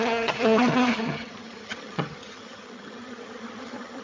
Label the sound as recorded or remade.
remade